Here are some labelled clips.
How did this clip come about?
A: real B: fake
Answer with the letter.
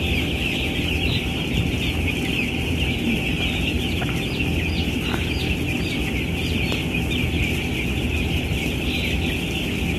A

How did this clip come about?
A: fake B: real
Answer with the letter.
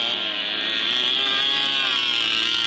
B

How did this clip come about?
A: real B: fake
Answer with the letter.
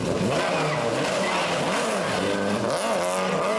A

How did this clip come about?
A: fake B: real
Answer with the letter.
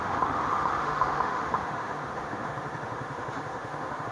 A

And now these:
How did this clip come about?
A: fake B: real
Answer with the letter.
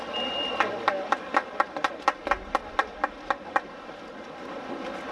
B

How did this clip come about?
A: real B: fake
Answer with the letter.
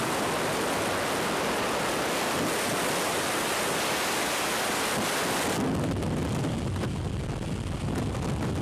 A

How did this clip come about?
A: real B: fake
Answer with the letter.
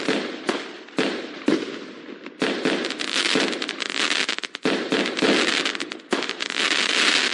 A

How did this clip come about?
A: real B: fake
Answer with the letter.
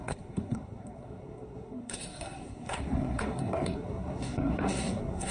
B